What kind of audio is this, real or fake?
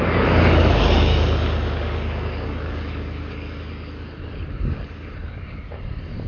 fake